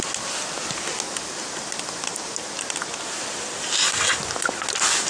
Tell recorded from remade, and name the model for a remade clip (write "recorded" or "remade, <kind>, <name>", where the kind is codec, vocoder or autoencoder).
recorded